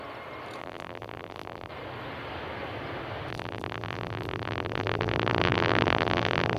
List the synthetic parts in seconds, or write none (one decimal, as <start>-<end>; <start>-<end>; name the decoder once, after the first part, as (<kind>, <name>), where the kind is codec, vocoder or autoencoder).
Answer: 0.6-1.7 (vocoder, BigVGAN v2); 3.3-6.6